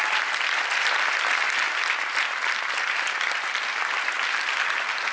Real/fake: real